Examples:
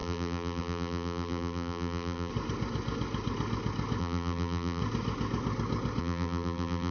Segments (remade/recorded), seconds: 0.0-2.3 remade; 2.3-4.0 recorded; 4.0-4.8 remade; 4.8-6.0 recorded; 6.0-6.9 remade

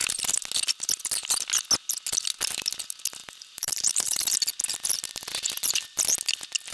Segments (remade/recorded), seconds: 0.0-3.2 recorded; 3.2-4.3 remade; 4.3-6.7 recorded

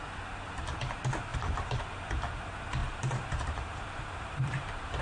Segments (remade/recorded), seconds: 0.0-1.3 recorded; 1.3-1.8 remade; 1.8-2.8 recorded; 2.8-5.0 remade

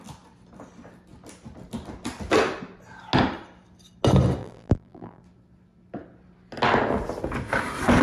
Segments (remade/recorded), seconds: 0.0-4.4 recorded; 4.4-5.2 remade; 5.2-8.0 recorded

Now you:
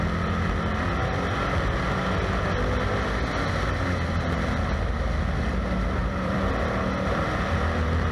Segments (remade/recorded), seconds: 0.0-6.0 recorded; 6.0-6.5 remade; 6.5-7.2 recorded; 7.2-8.1 remade